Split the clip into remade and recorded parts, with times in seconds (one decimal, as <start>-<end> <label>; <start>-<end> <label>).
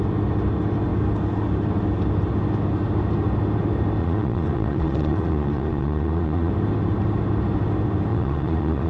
0.0-4.0 recorded; 4.0-6.5 remade; 6.5-8.1 recorded; 8.1-8.9 remade